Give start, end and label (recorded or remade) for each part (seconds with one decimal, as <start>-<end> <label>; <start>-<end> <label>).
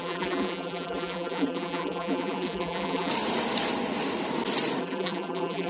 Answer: 0.0-3.1 remade; 3.1-4.8 recorded; 4.8-5.7 remade